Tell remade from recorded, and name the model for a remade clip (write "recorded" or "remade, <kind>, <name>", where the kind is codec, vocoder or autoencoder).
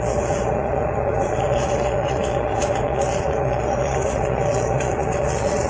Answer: remade, vocoder, Vocos